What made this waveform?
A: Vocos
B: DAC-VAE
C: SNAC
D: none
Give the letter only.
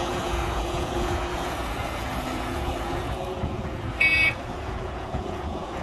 A